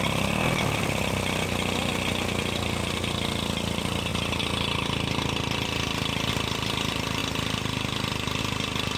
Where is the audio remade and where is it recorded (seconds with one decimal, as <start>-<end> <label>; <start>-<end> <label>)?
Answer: 0.0-9.0 recorded